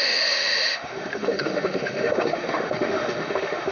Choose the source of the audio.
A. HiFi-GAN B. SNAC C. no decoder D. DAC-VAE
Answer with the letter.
D